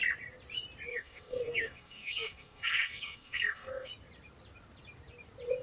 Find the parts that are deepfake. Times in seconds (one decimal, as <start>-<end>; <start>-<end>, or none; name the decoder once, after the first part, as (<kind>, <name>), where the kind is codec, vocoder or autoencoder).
0.9-3.9 (codec, SNAC)